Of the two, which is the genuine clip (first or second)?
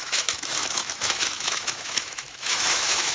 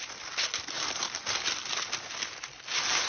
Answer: second